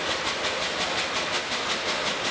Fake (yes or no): no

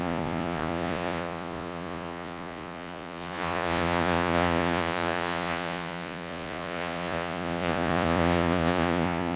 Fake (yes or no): yes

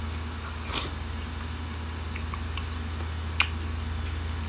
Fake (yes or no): no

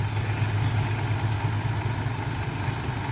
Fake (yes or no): no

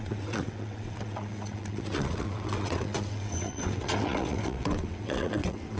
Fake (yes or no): yes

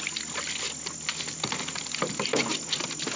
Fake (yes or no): no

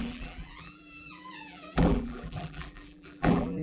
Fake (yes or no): yes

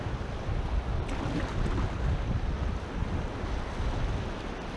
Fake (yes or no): no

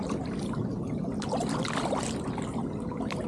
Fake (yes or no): no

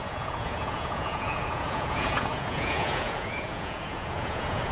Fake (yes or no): yes